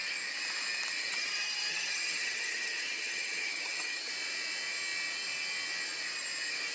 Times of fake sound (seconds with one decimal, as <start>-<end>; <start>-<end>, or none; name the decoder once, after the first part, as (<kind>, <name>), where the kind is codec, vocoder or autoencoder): 1.0-4.1 (vocoder, HiFi-GAN)